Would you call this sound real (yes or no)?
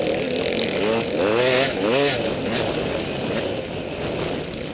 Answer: yes